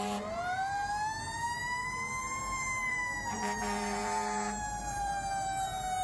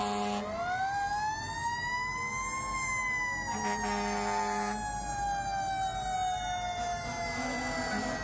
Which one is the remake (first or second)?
first